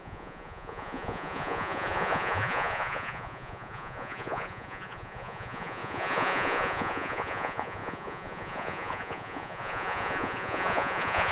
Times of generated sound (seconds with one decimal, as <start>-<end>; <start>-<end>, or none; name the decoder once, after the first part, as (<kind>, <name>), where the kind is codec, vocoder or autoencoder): 0.0-11.3 (vocoder, Vocos)